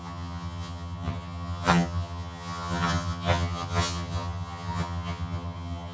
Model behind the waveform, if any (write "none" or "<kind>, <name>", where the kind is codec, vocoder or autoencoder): vocoder, HiFi-GAN